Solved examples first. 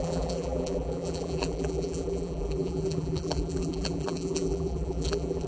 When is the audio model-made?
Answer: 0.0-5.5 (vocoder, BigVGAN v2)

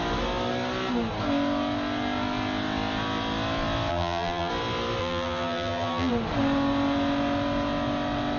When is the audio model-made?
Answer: 3.9-4.5 (vocoder, BigVGAN v2); 5.0-6.1

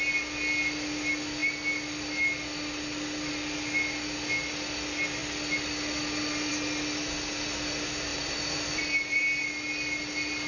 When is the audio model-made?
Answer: 8.1-9.4 (vocoder, BigVGAN v2)

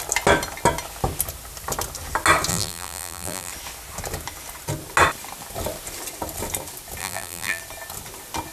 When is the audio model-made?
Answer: 2.5-3.5 (vocoder, BigVGAN v2); 7.0-7.6

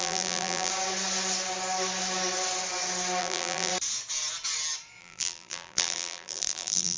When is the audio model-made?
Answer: 0.0-0.7 (vocoder, BigVGAN v2); 3.2-3.7; 5.0-7.0

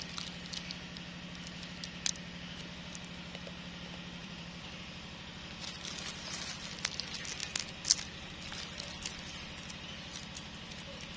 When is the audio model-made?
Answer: 4.2-4.8 (vocoder, BigVGAN v2)